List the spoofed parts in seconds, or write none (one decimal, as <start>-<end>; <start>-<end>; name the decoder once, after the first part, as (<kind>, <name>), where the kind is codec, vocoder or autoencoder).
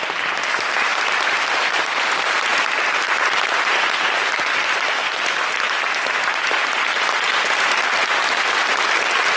none